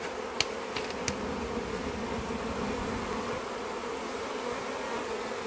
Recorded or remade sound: recorded